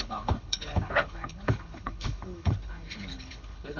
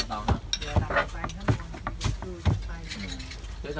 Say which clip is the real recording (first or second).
second